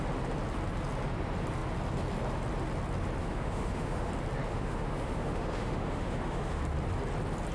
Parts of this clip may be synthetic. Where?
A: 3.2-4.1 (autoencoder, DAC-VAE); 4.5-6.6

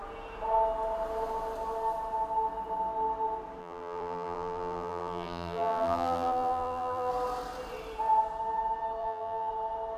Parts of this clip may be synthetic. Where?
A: 3.6-7.1 (vocoder, BigVGAN v2); 9.0-9.5

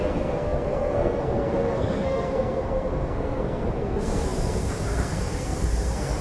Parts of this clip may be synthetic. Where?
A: 0.0-6.2 (codec, SNAC)

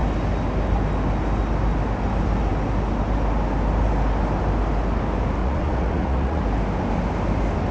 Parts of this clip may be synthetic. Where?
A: 5.4-6.4 (vocoder, Vocos)

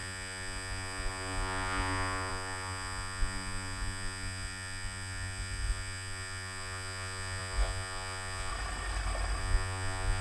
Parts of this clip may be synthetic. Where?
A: 0.0-8.5 (vocoder, Vocos); 9.4-10.2

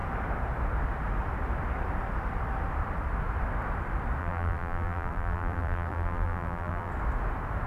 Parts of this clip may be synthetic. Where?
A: 4.2-6.9 (vocoder, BigVGAN v2)